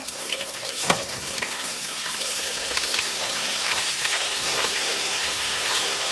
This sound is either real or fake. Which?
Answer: fake